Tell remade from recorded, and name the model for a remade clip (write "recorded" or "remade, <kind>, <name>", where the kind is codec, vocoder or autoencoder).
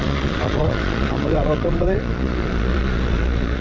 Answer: remade, vocoder, Vocos